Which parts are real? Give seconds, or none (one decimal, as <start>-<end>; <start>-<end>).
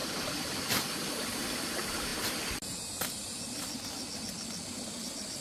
0.0-5.4